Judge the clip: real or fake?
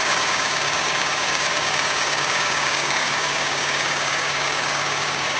fake